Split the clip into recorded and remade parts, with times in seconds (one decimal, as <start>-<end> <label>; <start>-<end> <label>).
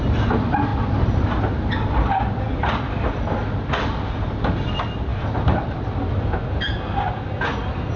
0.0-8.0 recorded